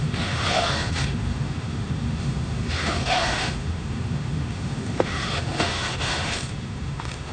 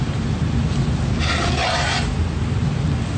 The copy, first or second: first